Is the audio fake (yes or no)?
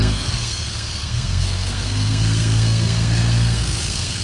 yes